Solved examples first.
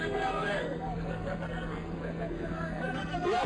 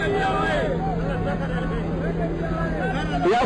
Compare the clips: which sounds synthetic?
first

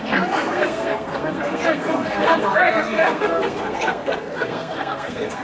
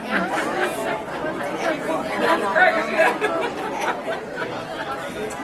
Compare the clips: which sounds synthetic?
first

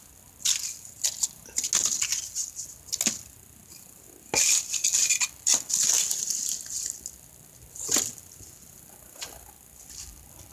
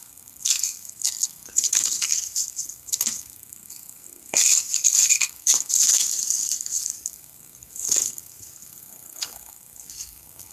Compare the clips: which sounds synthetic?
second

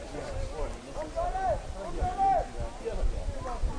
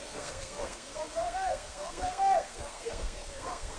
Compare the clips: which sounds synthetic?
second